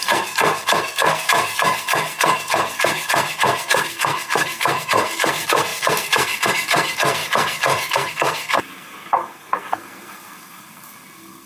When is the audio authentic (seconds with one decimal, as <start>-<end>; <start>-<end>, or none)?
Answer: none